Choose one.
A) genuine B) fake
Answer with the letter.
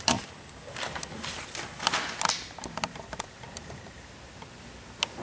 A